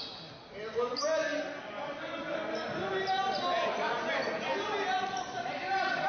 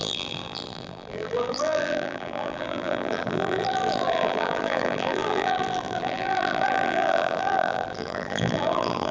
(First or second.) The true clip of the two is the first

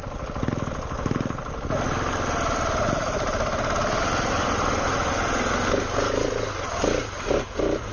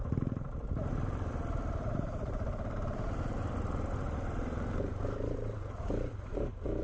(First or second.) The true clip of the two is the first